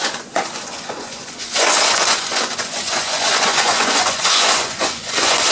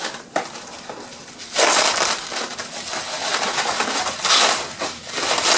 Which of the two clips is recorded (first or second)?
second